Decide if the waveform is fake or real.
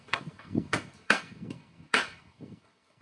fake